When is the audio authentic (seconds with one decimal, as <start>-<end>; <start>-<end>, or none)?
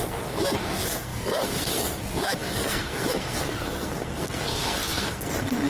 none